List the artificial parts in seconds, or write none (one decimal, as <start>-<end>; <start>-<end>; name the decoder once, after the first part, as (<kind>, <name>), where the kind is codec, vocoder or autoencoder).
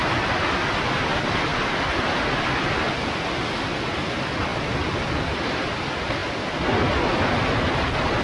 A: none